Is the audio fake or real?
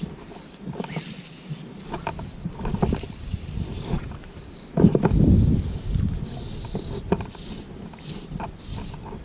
fake